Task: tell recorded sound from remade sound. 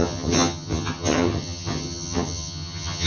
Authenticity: remade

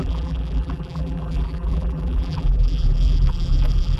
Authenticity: remade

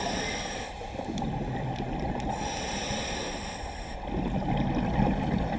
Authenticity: recorded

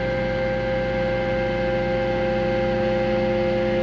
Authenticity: recorded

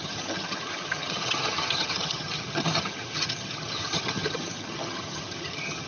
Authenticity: remade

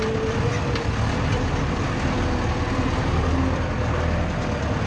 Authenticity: recorded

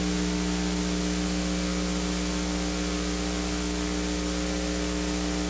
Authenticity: recorded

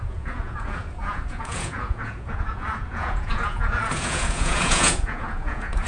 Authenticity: remade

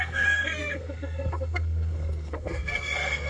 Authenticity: remade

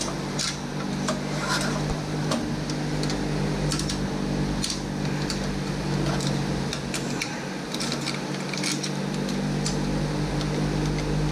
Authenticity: recorded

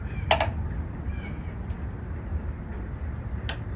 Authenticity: recorded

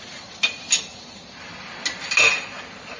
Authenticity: recorded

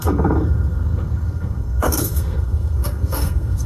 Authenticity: remade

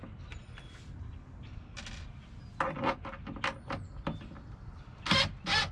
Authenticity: recorded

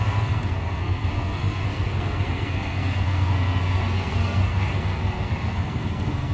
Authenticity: remade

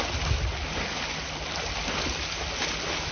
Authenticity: recorded